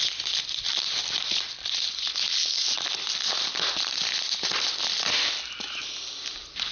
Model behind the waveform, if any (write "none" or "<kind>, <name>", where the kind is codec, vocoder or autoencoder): none